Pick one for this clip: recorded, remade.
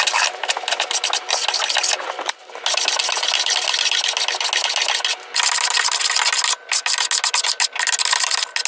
recorded